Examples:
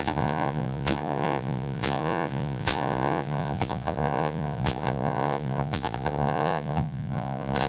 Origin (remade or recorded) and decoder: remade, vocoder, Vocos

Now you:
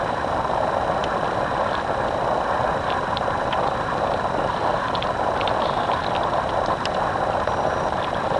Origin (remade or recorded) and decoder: recorded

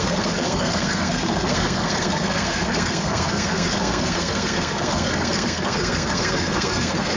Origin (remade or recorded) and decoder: remade, codec, SNAC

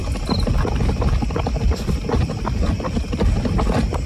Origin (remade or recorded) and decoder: recorded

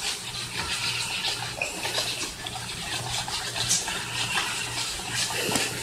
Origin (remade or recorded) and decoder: recorded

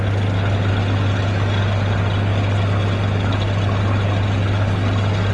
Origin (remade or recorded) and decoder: recorded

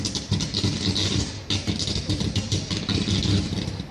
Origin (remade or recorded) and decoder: recorded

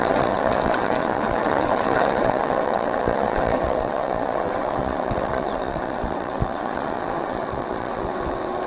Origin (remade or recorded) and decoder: remade, vocoder, WaveNeXt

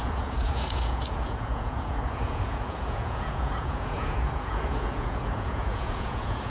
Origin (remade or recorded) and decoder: remade, vocoder, Vocos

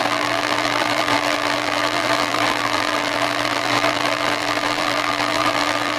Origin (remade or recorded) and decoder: remade, vocoder, BigVGAN v2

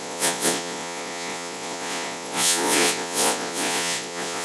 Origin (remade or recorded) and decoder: remade, vocoder, Vocos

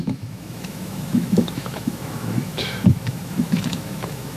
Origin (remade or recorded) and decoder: remade, autoencoder, DAC-VAE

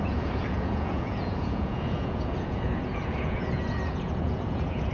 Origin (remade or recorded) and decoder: remade, vocoder, Vocos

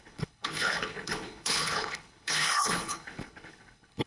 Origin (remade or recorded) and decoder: remade, codec, HILCodec